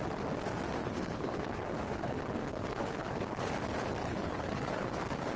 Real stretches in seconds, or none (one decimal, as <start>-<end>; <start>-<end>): 0.0-0.8; 3.5-4.0; 4.9-5.4